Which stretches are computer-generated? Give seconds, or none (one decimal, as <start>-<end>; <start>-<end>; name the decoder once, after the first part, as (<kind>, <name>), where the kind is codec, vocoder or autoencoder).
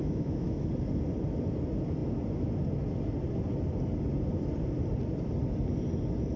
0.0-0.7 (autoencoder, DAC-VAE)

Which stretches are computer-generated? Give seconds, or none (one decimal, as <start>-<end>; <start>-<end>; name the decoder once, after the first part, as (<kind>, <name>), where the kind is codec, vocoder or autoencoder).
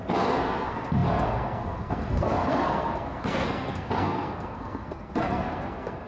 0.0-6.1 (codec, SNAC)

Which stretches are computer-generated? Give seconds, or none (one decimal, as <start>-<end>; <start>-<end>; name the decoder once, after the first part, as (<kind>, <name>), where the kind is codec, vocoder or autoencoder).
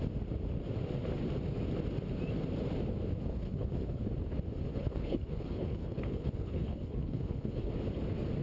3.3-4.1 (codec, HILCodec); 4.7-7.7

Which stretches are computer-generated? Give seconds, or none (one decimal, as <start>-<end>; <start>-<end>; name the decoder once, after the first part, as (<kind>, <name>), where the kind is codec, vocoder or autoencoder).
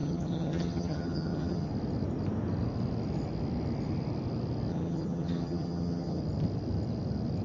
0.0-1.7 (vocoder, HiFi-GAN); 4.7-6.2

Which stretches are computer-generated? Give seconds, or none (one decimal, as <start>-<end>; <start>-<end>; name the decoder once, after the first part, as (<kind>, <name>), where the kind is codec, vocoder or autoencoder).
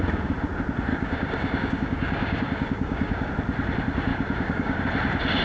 0.9-3.3 (codec, DAC); 4.1-4.8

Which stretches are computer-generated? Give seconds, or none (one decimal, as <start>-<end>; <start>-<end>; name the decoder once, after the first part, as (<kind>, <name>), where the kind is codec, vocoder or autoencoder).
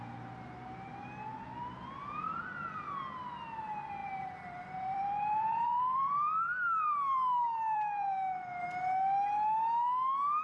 4.0-8.6 (vocoder, BigVGAN v2)